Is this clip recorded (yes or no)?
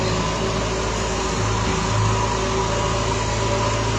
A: yes